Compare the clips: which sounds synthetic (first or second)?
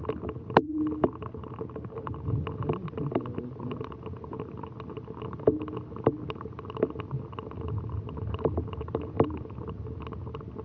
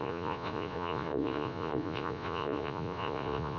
second